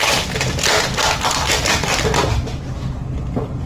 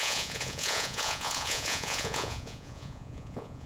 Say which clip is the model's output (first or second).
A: second